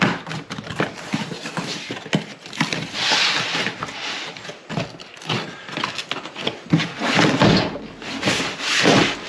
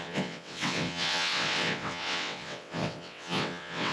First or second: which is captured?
first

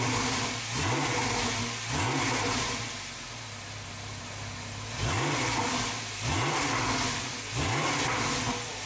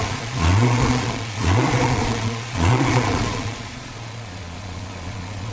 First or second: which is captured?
first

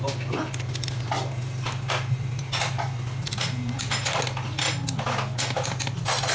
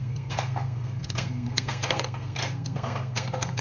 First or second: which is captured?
first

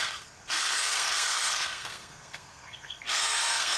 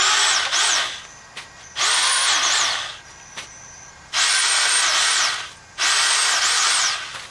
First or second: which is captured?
second